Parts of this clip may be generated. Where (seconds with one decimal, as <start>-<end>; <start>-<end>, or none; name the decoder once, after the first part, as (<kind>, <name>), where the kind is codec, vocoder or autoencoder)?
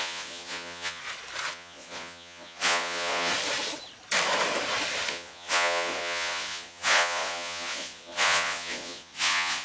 0.0-1.0 (vocoder, Vocos); 1.5-3.3; 5.1-9.6